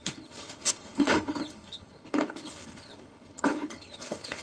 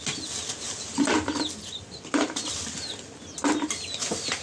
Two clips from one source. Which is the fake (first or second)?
first